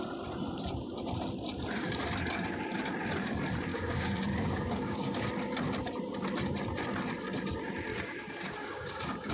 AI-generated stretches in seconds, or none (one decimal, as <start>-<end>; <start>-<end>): 3.7-5.3; 7.9-9.3